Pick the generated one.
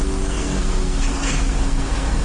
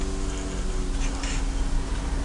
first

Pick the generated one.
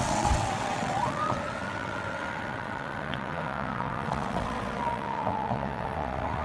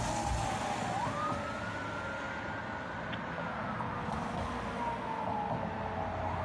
first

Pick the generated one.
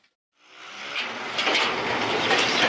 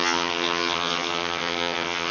second